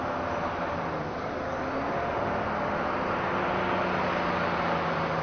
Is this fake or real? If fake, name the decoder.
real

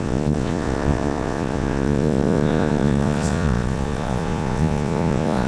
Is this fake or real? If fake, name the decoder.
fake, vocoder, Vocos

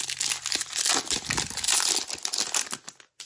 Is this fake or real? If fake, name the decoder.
real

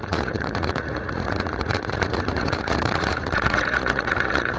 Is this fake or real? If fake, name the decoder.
fake, vocoder, Vocos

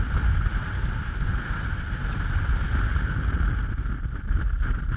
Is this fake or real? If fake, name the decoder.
real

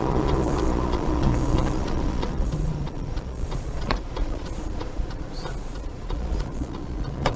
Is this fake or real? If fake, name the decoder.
fake, vocoder, Vocos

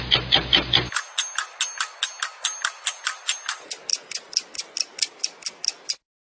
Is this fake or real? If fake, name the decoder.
real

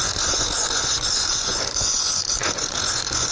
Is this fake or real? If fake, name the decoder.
fake, vocoder, Vocos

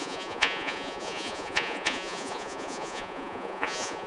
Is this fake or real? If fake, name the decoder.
fake, vocoder, Vocos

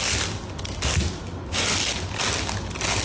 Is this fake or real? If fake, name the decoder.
real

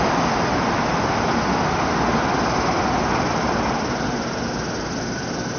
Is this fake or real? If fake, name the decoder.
real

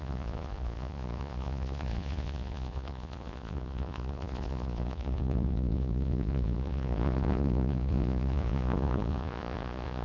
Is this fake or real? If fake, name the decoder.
fake, vocoder, Vocos